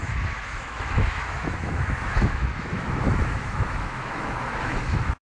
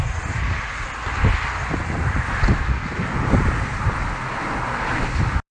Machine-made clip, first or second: first